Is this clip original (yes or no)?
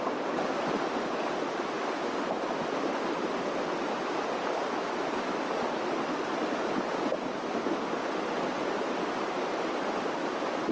yes